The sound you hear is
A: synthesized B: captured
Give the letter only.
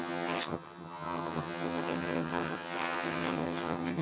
A